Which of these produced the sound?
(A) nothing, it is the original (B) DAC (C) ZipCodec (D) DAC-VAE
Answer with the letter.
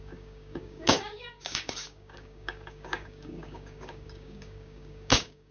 B